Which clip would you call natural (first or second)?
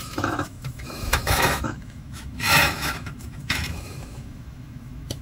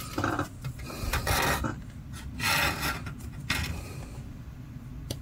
second